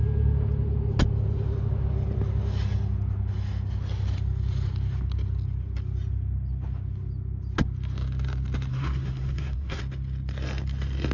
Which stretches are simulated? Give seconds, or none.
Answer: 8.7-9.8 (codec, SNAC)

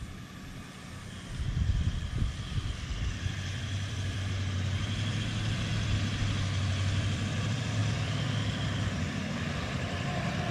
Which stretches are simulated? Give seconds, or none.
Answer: 0.0-0.8 (vocoder, BigVGAN v2); 2.4-10.5

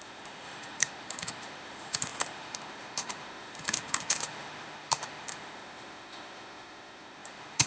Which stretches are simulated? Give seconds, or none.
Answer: 0.0-7.7 (autoencoder, DAC-VAE)

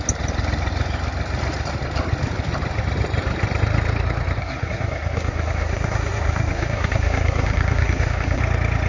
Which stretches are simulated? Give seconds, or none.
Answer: 4.4-8.4 (codec, SNAC)

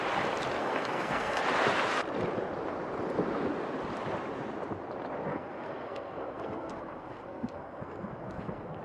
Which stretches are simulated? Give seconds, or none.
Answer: 0.6-1.4 (codec, SNAC); 5.3-8.8